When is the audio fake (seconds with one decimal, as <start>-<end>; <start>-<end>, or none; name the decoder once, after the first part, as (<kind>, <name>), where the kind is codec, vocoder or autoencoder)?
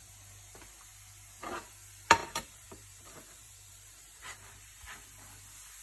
2.2-4.8 (vocoder, BigVGAN v2)